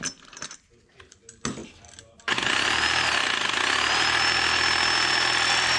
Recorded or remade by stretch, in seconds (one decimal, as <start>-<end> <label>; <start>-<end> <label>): 0.0-5.8 recorded